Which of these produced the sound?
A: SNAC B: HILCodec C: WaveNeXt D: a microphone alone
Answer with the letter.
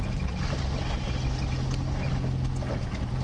D